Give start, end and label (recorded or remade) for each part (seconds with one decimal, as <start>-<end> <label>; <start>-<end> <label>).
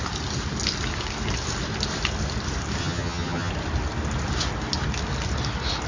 0.0-2.8 recorded; 2.8-3.5 remade; 3.5-5.9 recorded